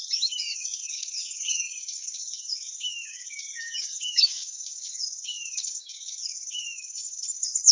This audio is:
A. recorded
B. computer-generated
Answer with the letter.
B